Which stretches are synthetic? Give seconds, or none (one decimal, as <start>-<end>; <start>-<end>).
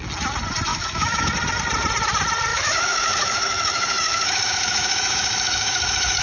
0.7-1.3; 2.5-6.2